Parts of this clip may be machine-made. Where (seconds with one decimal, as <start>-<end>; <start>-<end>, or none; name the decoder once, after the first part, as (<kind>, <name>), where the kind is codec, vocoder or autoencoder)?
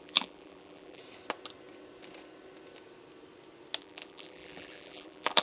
0.0-1.0 (vocoder, BigVGAN v2); 3.8-5.4